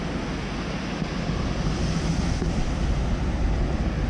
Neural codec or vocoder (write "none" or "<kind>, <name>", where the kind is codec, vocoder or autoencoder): none